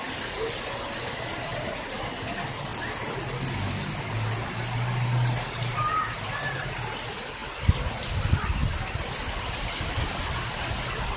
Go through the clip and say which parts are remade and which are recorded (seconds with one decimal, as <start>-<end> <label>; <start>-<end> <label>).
0.0-11.2 recorded